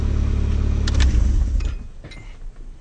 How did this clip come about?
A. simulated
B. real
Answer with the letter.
B